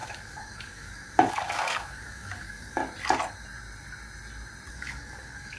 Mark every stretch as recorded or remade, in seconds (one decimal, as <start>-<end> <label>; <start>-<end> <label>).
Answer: 0.0-2.8 remade; 2.8-4.7 recorded; 4.7-5.6 remade